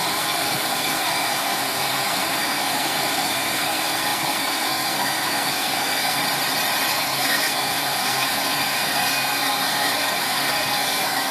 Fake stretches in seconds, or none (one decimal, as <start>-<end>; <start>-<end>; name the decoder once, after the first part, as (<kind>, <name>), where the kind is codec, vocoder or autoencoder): 0.0-6.2 (codec, SNAC); 6.9-11.3